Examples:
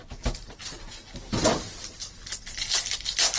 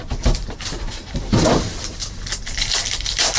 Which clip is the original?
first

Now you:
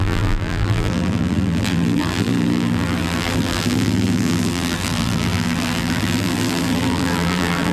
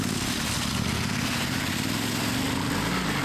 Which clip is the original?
second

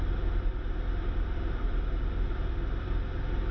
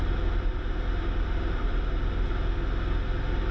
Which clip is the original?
second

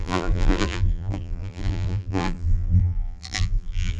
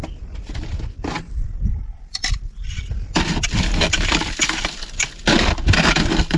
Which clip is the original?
second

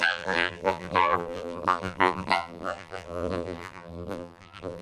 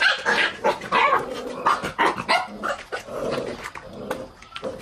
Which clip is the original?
second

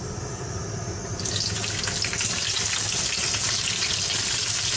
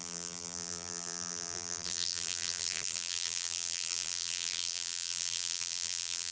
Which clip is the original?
first